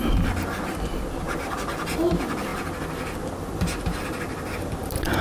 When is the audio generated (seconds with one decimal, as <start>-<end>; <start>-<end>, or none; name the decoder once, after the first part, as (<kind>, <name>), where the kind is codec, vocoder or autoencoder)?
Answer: none